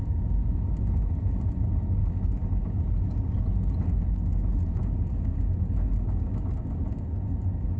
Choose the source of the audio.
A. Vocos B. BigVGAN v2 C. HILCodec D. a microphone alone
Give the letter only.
D